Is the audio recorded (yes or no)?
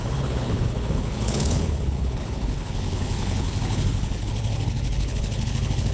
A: no